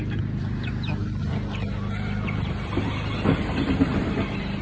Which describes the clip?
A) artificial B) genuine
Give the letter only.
B